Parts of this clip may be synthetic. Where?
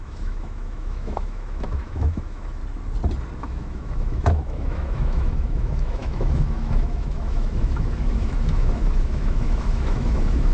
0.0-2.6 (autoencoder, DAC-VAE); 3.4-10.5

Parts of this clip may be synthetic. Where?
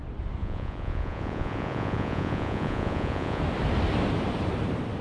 0.4-3.4 (vocoder, Vocos)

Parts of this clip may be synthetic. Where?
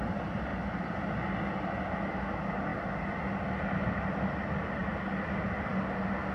0.5-1.1 (vocoder, BigVGAN v2)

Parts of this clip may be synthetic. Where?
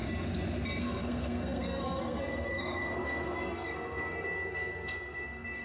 0.8-5.6 (codec, SNAC)